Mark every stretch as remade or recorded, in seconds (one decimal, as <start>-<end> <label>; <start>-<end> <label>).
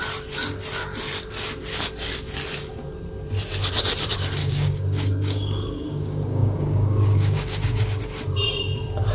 0.0-4.4 recorded; 4.4-8.0 remade; 8.0-9.1 recorded